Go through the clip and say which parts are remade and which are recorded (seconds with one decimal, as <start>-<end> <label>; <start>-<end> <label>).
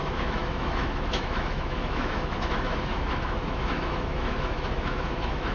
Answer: 0.0-5.5 remade